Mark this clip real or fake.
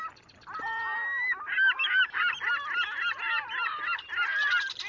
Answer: real